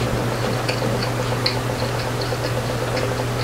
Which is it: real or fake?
real